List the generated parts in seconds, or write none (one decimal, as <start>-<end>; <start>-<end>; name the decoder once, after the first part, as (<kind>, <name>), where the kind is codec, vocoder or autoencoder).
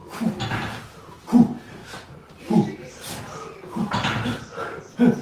none